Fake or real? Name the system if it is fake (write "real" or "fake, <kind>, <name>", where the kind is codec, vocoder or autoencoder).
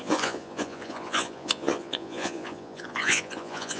fake, vocoder, Vocos